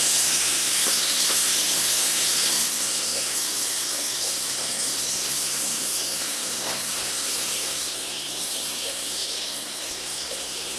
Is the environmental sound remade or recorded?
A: remade